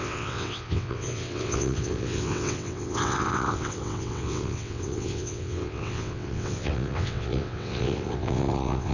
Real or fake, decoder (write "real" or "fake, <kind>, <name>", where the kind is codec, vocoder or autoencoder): fake, vocoder, WaveNeXt